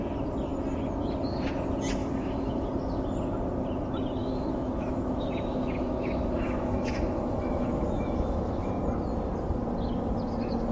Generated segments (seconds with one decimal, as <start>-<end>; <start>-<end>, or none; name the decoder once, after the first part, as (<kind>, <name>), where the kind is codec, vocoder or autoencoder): 2.0-2.7 (autoencoder, DAC-VAE); 4.2-8.7